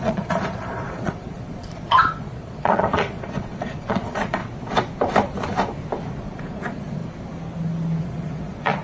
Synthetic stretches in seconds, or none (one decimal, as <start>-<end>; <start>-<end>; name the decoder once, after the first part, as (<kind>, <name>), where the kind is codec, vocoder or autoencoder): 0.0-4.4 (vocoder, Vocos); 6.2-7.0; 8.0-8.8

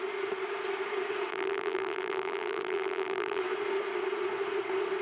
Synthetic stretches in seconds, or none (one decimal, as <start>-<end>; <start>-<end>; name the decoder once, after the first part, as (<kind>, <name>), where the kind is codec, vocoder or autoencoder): 1.3-3.4 (vocoder, BigVGAN v2)

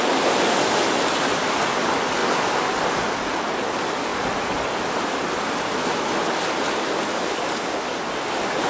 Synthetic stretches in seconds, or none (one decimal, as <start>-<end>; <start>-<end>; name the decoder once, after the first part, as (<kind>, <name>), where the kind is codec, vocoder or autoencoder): none

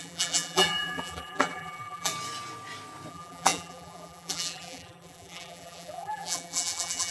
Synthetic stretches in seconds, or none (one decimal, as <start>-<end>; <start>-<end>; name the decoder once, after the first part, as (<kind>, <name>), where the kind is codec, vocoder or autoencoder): 0.0-2.1 (vocoder, BigVGAN v2); 3.1-7.1

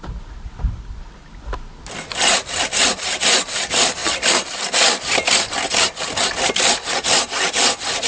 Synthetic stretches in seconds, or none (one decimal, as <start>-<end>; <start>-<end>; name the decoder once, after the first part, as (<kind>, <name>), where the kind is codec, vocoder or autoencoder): none

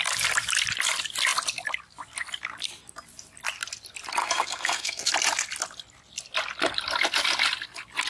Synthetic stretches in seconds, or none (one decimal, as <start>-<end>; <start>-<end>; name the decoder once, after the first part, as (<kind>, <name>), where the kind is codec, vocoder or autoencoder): 4.2-5.1 (codec, SNAC)